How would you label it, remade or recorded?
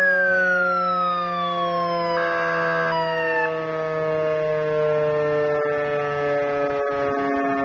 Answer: recorded